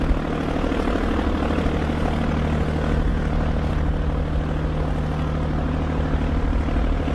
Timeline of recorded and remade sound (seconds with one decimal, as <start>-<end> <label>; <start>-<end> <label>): 0.0-7.1 recorded